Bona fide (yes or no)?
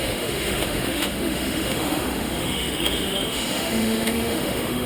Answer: no